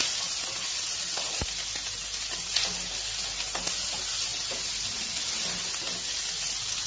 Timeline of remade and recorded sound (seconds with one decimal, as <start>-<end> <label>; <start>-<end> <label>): 0.0-6.9 recorded